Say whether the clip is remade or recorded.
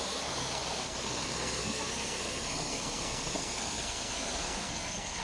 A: remade